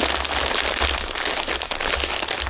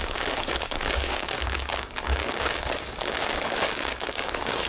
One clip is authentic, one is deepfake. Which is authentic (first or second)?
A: first